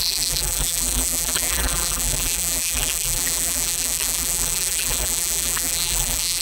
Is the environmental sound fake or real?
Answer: fake